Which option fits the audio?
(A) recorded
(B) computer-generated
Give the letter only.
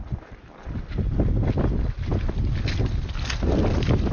A